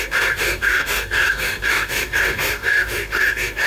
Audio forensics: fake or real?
fake